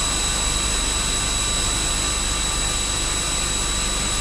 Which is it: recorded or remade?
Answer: recorded